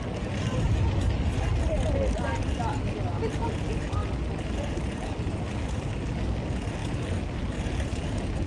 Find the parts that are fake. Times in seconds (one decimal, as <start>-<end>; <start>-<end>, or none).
none